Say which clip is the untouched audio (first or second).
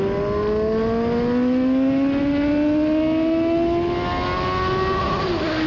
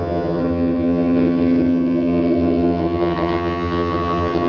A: first